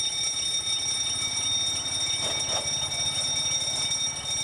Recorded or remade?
recorded